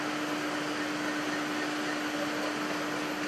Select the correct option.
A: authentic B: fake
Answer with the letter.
A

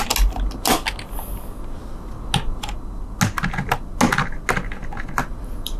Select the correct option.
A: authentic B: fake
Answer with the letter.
A